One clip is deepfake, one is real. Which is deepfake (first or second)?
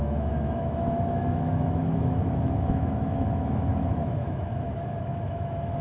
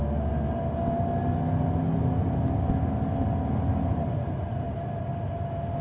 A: first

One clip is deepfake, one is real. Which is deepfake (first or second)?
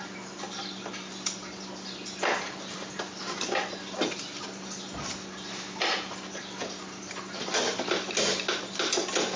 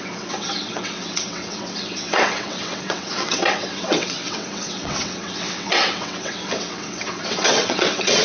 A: second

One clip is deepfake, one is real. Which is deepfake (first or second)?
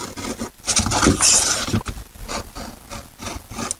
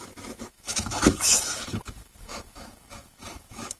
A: second